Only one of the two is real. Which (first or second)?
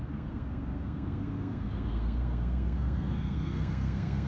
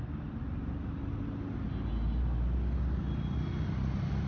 second